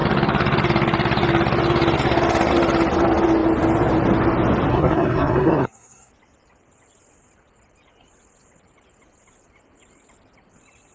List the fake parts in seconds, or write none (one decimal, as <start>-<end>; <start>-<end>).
4.7-6.1